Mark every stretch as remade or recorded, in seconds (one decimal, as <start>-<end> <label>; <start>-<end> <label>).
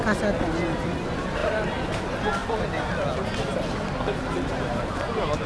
0.0-5.5 recorded